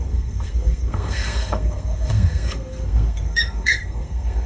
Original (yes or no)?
no